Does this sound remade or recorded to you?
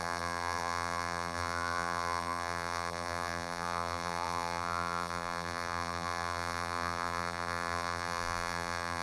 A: remade